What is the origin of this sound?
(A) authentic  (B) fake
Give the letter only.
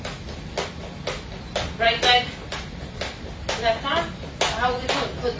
A